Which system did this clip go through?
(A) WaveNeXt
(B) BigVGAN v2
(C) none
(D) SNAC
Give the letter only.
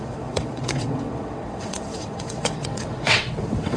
A